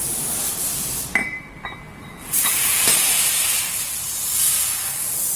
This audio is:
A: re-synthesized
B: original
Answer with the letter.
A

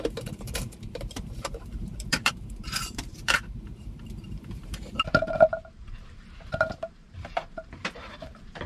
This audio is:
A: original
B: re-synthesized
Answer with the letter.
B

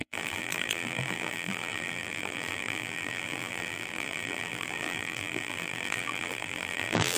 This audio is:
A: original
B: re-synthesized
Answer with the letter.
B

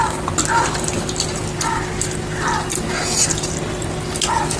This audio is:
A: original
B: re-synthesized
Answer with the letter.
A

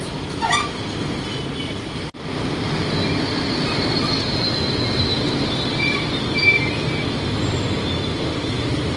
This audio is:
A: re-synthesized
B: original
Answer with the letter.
B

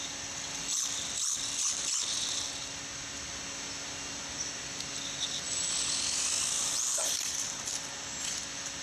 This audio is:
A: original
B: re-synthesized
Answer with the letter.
A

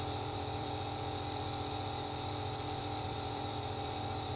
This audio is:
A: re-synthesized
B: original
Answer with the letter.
A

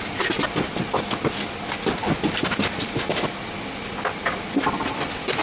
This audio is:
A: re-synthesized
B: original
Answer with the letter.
B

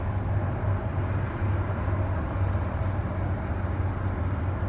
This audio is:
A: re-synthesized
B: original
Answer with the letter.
B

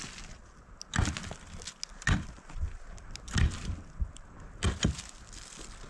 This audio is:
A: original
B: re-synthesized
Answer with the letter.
A